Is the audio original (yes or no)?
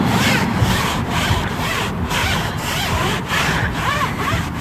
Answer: yes